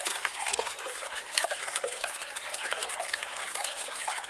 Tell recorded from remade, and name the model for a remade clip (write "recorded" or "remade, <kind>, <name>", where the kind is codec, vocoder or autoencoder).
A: remade, codec, SNAC